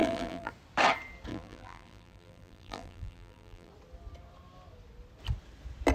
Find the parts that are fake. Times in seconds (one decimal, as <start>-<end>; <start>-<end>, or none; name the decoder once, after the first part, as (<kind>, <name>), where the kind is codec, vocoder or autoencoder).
0.0-0.5 (vocoder, BigVGAN v2); 1.3-3.7